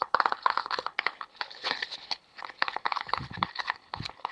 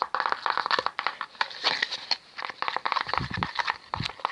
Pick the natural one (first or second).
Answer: second